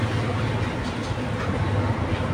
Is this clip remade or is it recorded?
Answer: recorded